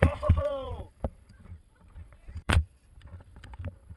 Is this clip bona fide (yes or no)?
no